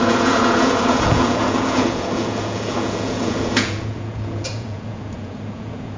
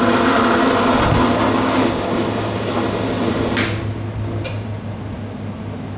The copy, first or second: first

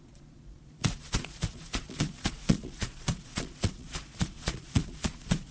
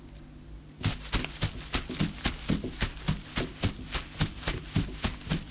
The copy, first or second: first